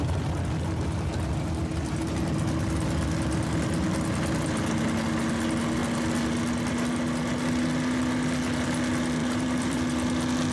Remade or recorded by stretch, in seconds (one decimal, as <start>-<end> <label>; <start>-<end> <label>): 0.0-9.2 recorded; 9.2-9.8 remade; 9.8-10.5 recorded